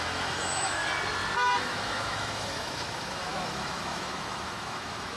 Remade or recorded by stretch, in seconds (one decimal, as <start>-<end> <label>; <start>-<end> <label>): 0.0-0.8 remade; 0.8-1.6 recorded; 1.6-5.2 remade